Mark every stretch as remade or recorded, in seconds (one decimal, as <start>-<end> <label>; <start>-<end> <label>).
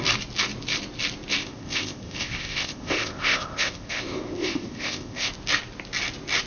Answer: 0.0-1.4 recorded; 1.4-5.3 remade; 5.3-6.5 recorded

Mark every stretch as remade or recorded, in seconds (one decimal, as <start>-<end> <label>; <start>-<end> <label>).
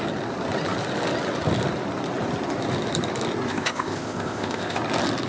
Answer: 0.0-3.5 recorded; 3.5-4.8 remade; 4.8-5.3 recorded